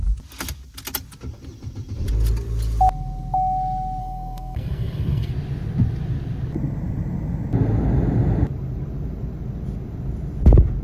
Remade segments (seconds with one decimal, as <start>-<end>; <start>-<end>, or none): 4.0-5.3